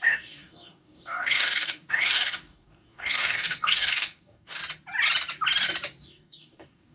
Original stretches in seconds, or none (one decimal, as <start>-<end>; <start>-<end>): 4.6-6.0

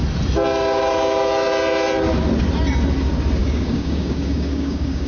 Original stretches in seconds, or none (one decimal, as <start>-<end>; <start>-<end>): 0.0-3.4

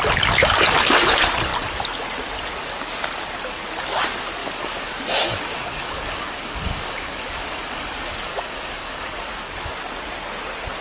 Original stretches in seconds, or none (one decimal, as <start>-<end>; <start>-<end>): 0.0-0.4; 1.1-4.4; 4.9-5.5; 9.7-10.8

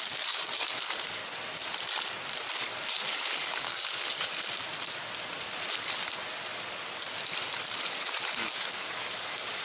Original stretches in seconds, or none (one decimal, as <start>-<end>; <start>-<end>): 1.2-3.1; 4.3-8.3

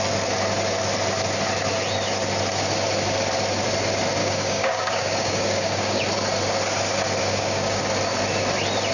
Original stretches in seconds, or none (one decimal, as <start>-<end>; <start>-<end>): 0.0-4.2; 6.0-7.2; 7.8-8.9

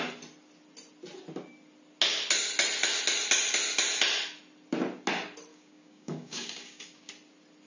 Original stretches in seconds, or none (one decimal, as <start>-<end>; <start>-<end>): 0.0-5.5; 7.1-7.7

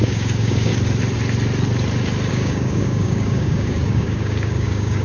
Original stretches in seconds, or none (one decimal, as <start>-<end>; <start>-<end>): 0.7-2.3